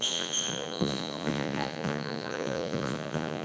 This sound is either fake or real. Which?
fake